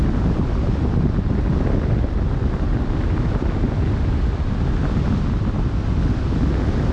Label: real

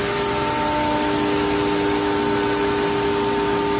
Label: real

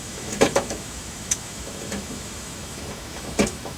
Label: fake